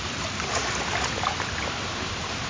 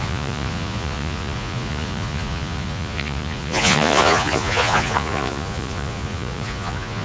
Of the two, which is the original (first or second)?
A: first